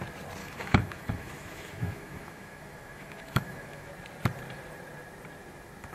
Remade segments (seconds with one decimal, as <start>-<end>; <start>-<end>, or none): 0.4-3.9